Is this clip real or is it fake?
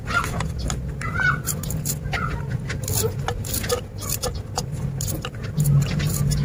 real